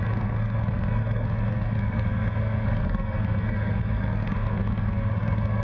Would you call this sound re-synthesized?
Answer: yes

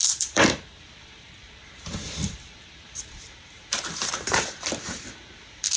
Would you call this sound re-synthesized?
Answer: yes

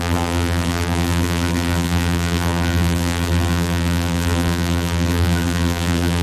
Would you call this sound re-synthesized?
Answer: yes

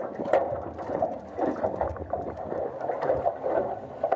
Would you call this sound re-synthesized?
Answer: no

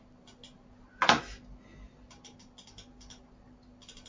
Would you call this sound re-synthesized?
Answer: no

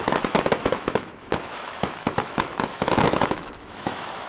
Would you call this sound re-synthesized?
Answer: yes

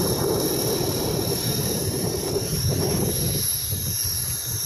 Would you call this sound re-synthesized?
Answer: yes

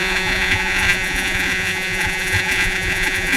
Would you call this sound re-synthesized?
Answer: yes